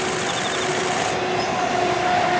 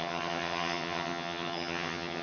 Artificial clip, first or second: second